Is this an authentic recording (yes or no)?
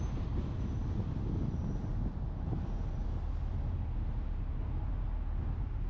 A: yes